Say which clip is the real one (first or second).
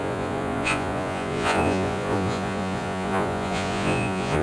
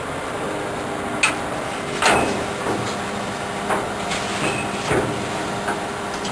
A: second